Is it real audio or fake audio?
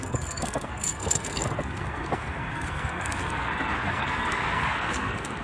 fake